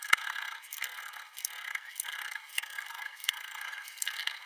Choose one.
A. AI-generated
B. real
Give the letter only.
A